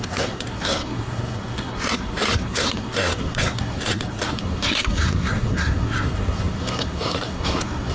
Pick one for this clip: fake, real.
fake